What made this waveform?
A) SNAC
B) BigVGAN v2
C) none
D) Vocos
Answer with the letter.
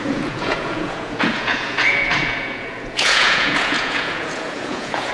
D